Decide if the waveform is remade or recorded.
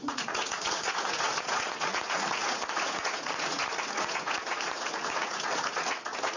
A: remade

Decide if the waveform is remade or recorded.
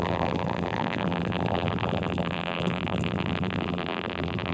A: remade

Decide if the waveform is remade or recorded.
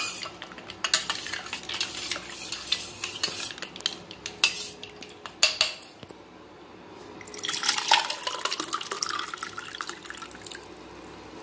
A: recorded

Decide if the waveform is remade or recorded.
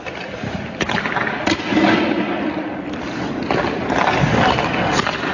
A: recorded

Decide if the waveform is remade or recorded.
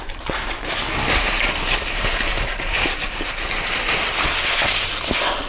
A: recorded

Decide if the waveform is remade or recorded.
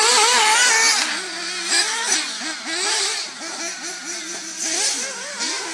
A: recorded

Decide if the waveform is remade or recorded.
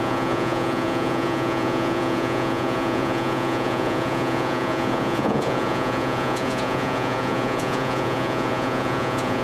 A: remade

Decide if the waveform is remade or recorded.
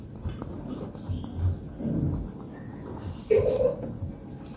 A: recorded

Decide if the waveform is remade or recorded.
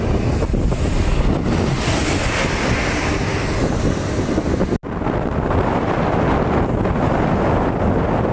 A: recorded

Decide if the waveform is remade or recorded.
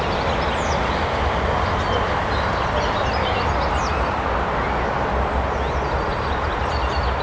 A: recorded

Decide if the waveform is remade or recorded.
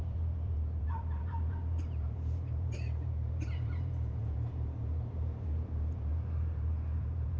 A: remade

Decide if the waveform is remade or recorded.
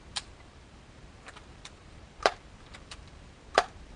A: remade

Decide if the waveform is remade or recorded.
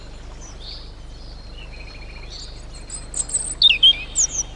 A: recorded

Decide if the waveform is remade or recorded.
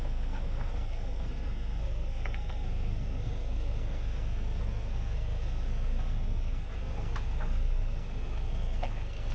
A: remade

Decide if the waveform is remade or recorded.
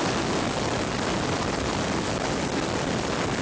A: recorded